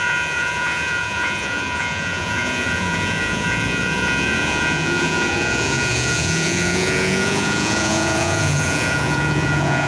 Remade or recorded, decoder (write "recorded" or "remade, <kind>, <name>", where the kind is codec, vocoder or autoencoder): remade, vocoder, Vocos